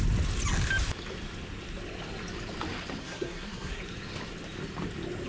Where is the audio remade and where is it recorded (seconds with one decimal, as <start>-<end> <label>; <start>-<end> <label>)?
0.0-3.0 recorded; 3.0-3.8 remade; 3.8-5.3 recorded